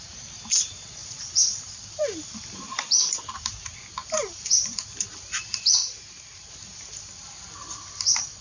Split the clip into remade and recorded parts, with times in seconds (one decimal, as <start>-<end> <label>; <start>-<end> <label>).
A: 0.0-1.0 recorded; 1.0-3.3 remade; 3.3-4.0 recorded; 4.0-5.0 remade; 5.0-8.4 recorded